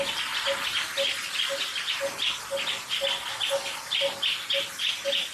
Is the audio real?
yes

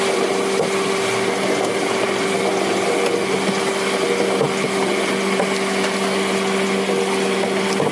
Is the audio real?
yes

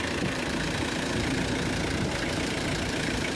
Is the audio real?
no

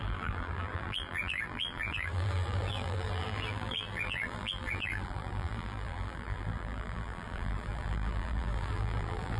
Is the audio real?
no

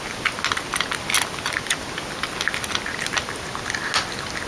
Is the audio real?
yes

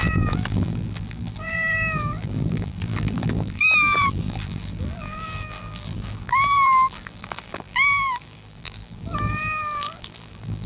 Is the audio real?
no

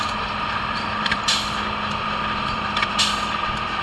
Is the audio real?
no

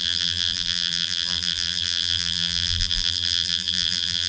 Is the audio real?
no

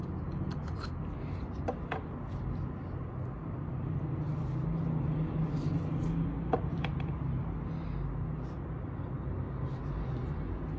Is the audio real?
yes